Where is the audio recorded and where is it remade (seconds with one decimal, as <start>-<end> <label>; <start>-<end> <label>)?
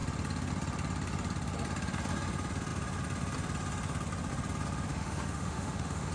0.0-4.9 recorded; 4.9-6.1 remade